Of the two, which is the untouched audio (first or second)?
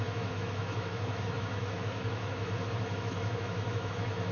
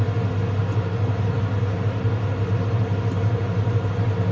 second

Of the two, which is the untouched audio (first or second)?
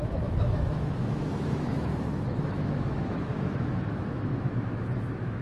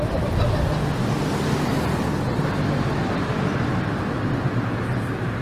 second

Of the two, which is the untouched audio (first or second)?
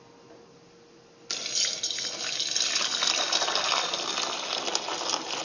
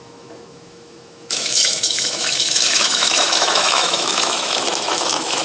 first